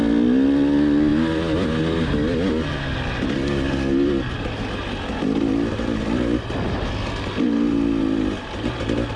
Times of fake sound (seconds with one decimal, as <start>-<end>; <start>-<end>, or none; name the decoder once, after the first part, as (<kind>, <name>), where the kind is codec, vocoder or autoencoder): none